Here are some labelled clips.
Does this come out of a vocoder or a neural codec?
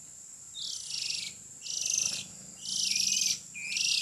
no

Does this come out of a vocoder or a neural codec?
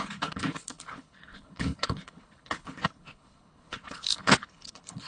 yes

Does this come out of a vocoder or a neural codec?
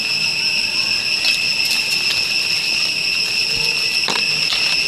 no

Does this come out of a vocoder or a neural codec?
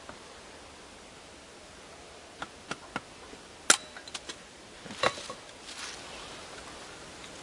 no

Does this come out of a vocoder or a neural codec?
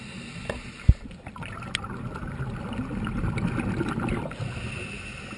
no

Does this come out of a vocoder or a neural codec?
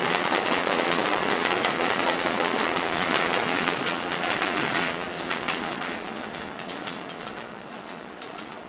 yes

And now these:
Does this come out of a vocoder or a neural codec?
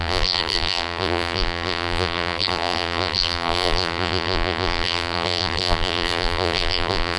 yes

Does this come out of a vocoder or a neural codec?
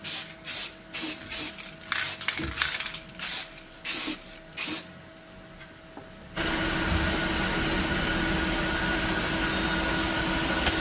no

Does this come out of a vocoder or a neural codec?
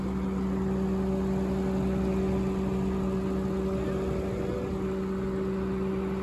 no